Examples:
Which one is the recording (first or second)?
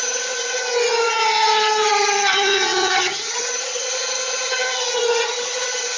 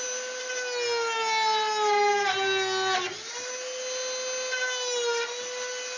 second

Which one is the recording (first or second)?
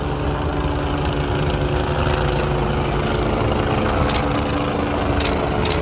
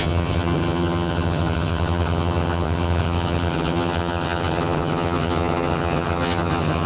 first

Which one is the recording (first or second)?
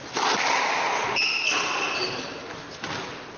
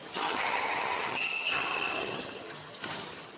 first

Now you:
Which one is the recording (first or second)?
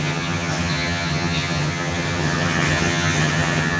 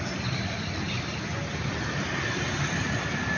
second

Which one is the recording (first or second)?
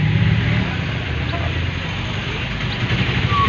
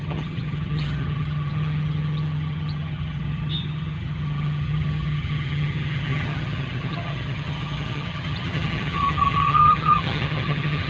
first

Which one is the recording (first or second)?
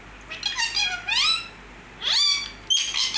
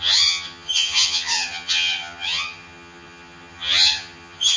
first